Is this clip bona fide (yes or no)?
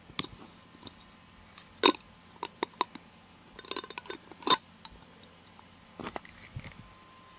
yes